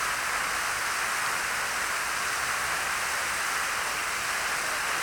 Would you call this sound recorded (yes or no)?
yes